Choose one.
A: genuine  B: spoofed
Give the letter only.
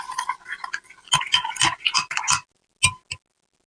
A